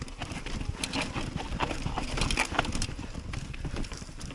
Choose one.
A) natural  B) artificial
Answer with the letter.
B